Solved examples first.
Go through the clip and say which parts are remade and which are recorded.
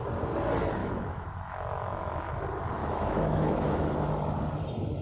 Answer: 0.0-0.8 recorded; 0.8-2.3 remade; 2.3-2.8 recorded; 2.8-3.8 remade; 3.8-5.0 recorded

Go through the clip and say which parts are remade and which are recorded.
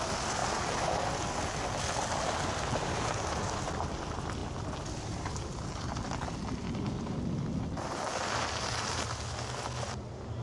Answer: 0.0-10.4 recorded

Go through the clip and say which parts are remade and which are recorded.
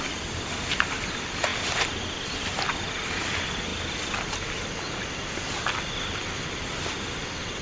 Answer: 0.0-7.6 recorded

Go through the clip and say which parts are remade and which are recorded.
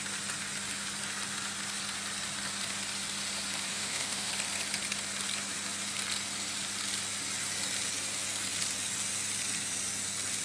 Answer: 0.0-3.7 recorded; 3.7-4.3 remade; 4.3-10.4 recorded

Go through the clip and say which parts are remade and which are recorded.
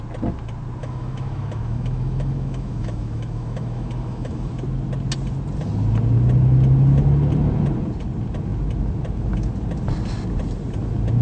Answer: 0.0-0.8 recorded; 0.8-4.5 remade; 4.5-11.2 recorded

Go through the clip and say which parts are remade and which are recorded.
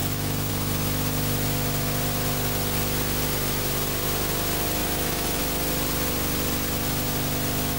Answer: 0.0-0.5 remade; 0.5-4.8 recorded; 4.8-5.4 remade; 5.4-7.8 recorded